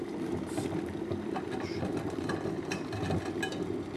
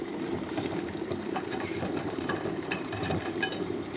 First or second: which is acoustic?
first